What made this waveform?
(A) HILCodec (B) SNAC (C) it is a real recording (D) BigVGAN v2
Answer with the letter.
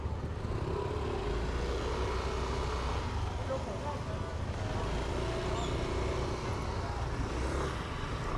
C